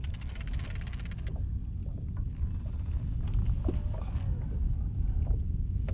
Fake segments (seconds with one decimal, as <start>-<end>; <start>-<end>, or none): none